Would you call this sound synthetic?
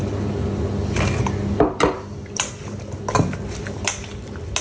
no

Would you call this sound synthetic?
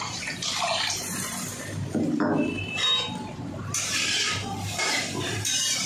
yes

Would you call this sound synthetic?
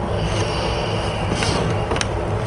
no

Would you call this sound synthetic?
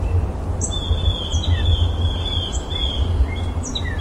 no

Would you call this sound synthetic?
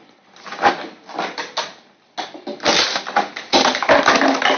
no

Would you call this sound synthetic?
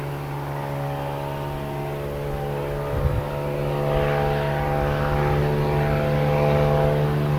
no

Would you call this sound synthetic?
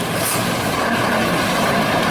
yes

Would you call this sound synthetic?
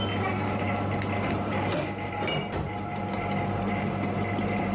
no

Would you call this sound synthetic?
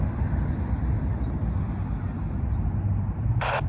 no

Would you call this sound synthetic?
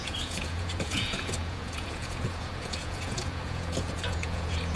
yes